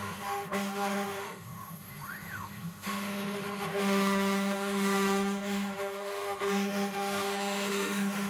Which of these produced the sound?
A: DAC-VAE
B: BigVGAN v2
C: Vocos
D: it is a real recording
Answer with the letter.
A